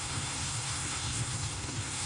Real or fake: fake